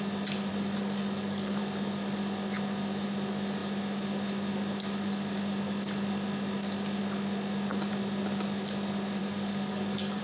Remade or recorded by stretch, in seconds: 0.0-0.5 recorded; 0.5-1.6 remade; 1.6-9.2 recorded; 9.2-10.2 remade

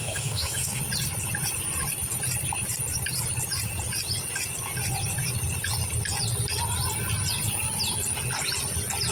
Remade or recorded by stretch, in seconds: 0.0-0.8 remade; 0.8-9.1 recorded

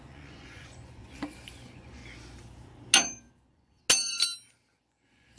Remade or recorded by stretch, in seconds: 0.0-2.0 remade; 2.0-3.3 recorded; 3.3-3.8 remade; 3.8-4.7 recorded; 4.7-5.4 remade

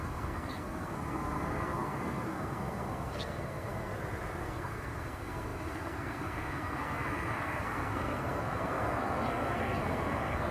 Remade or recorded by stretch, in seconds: 0.0-3.9 remade; 3.9-4.4 recorded; 4.4-10.5 remade

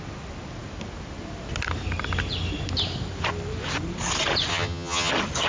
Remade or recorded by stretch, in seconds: 0.0-4.5 recorded; 4.5-5.1 remade; 5.1-5.5 recorded

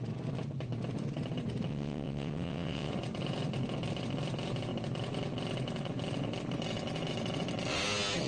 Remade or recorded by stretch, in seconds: 0.0-1.7 recorded; 1.7-2.9 remade; 2.9-8.3 recorded